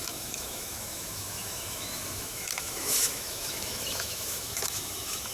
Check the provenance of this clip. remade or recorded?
remade